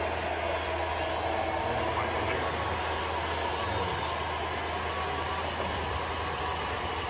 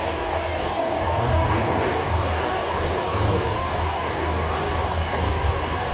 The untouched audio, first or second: first